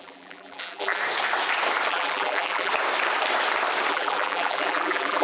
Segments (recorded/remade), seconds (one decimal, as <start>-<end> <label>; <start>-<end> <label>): 0.0-1.0 remade; 1.0-1.9 recorded; 1.9-2.7 remade; 2.7-3.9 recorded; 3.9-5.2 remade